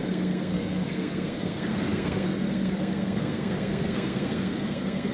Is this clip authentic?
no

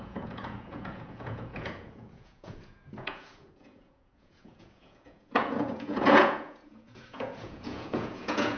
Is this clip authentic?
no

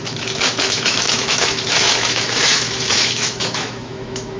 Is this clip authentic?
no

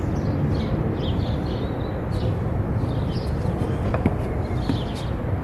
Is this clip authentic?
yes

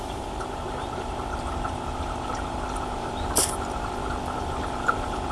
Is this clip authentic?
no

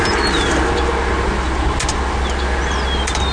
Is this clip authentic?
yes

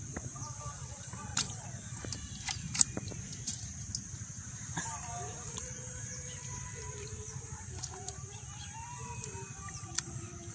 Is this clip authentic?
no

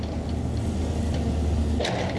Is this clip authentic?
yes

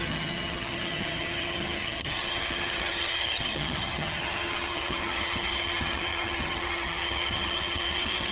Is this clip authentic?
no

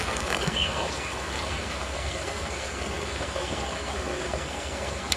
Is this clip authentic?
no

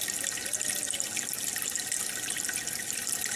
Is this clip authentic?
yes